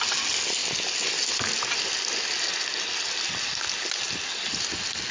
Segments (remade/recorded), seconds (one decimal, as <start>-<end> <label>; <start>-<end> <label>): 0.0-5.1 recorded